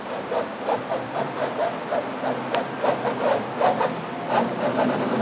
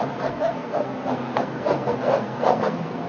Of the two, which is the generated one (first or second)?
second